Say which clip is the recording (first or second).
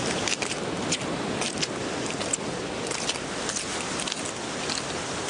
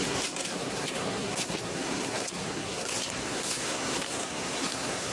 first